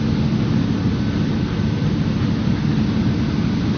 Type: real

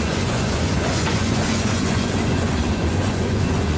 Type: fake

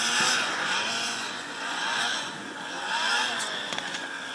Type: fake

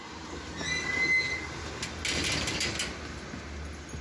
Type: real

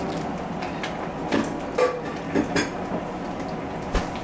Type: real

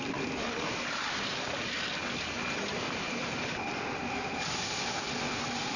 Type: real